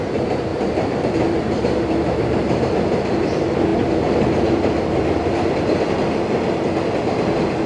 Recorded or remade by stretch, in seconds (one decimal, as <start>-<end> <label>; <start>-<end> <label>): 0.0-0.5 recorded; 0.5-3.3 remade; 3.3-7.7 recorded